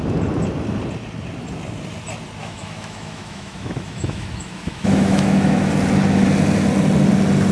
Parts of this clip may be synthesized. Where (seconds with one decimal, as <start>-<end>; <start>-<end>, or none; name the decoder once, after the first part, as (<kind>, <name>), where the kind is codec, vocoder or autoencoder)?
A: 2.4-5.7 (autoencoder, DAC-VAE)